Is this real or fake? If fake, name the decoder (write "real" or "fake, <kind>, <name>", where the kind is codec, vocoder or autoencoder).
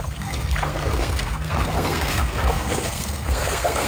fake, codec, SNAC